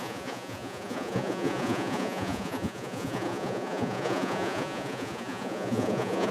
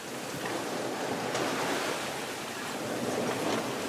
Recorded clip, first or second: second